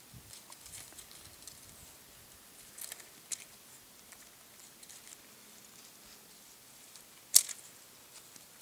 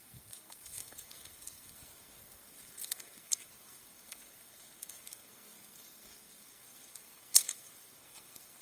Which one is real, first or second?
first